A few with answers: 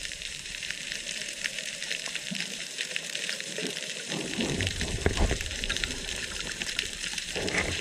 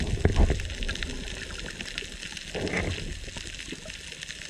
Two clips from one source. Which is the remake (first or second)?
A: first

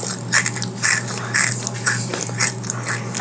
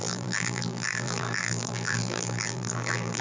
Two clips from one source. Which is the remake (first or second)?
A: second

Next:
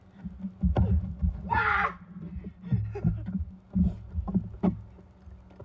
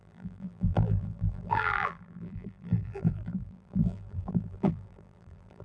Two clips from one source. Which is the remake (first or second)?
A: second